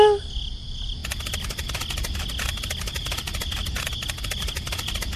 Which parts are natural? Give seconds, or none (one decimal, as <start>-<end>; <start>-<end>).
0.0-5.2